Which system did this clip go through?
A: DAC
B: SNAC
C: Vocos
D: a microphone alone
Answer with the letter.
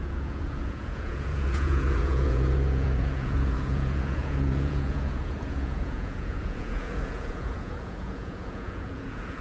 C